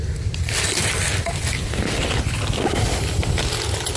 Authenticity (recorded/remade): recorded